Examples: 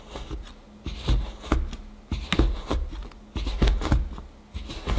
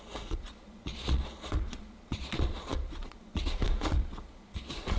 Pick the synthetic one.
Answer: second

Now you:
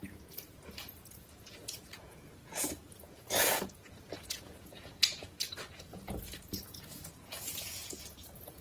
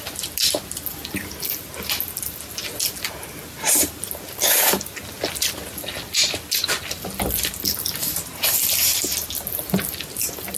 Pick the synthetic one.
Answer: first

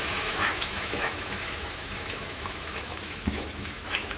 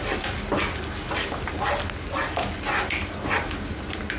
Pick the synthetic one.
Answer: first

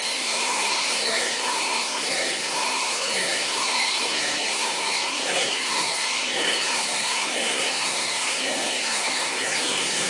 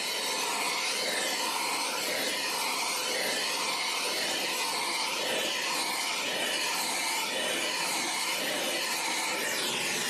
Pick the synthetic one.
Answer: first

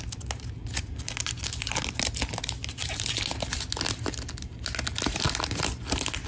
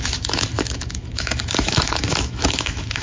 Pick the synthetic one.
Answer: second